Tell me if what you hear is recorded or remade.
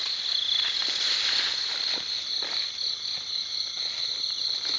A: recorded